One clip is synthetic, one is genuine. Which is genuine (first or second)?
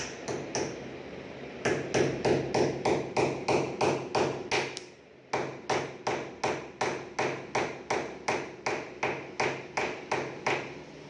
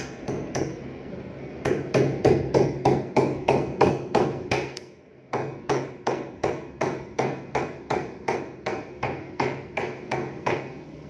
first